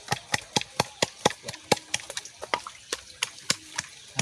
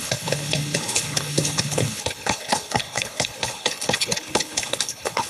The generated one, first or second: second